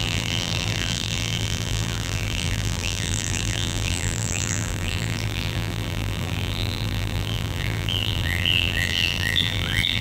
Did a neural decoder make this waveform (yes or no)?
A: yes